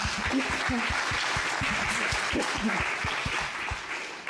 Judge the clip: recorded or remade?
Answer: recorded